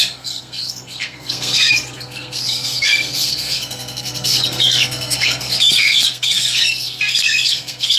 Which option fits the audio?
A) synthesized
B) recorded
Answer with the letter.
A